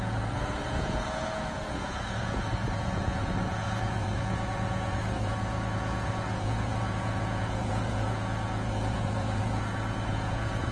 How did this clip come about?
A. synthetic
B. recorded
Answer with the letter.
A